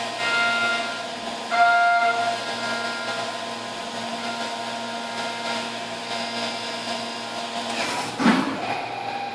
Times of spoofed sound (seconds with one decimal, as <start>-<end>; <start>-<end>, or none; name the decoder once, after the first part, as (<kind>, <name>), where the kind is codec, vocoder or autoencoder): none